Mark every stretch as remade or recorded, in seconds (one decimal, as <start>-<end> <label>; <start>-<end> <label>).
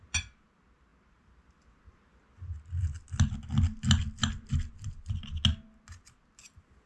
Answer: 0.0-6.9 recorded